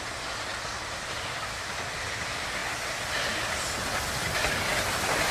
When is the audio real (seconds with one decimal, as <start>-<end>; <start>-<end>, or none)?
0.0-5.3